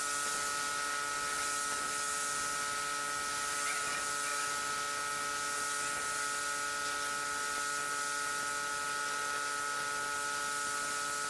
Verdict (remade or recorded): recorded